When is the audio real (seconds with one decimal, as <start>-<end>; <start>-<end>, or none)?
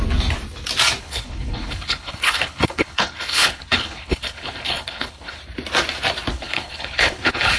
0.0-1.0; 5.4-6.3